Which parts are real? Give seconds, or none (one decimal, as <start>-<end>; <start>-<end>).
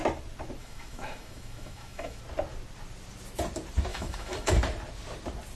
0.0-0.6; 2.2-3.9; 4.5-5.5